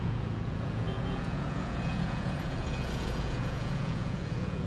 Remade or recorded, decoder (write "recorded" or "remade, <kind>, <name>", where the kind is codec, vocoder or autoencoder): remade, vocoder, Vocos